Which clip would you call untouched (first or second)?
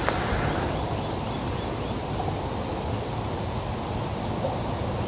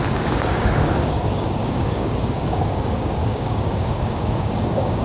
first